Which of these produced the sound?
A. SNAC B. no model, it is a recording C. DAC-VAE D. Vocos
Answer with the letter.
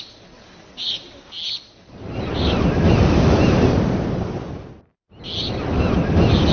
B